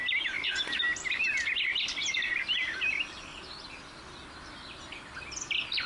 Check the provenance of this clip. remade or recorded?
recorded